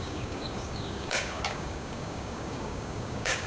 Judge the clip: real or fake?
fake